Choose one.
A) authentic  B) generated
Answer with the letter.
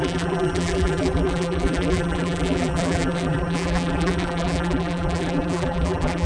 B